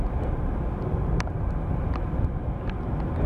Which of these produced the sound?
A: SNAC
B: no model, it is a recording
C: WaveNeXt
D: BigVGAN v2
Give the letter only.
B